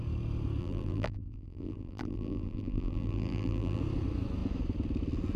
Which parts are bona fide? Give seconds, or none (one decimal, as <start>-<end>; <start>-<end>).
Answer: 0.0-0.6; 3.8-5.4